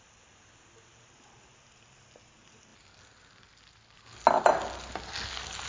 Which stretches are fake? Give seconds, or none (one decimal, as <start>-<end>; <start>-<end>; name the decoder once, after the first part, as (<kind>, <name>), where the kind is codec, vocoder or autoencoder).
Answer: none